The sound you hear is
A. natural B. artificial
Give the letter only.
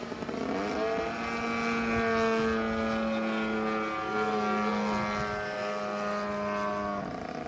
A